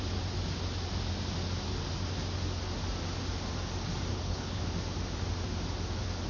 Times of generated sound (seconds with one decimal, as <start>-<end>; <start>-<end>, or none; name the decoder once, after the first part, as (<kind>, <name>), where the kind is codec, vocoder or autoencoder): 4.1-4.6 (codec, HILCodec)

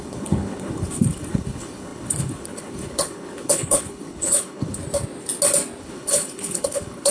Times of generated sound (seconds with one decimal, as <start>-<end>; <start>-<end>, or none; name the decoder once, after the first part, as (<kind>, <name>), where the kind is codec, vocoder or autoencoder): 0.0-4.8 (codec, HILCodec); 5.8-7.1

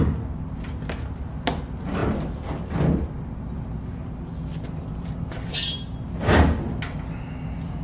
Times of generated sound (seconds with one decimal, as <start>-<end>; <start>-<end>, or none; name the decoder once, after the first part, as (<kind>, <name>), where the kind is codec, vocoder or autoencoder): none

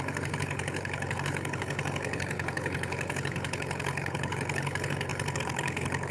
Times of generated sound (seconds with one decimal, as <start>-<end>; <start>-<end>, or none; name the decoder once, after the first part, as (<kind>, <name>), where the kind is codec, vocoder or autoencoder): 0.0-6.1 (codec, HILCodec)

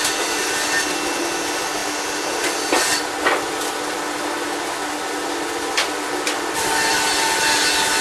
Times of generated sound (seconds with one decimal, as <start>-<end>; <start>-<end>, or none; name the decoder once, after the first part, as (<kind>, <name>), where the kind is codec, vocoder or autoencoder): none

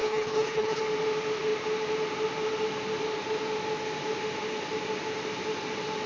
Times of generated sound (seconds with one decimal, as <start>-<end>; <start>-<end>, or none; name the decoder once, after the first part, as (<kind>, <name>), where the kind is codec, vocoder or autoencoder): 0.0-0.8 (codec, HILCodec)

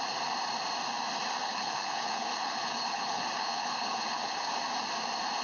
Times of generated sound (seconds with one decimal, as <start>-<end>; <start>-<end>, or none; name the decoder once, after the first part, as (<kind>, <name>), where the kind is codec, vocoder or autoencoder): 1.4-4.5 (codec, HILCodec)

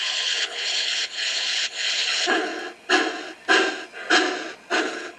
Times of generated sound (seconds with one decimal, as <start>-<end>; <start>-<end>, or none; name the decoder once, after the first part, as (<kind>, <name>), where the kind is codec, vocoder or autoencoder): 0.0-2.5 (codec, HILCodec); 4.8-5.2